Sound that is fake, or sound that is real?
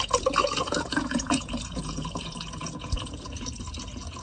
fake